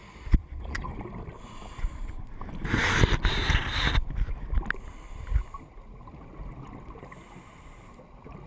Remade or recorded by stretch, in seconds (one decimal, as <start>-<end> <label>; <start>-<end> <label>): 0.0-0.9 remade; 0.9-8.5 recorded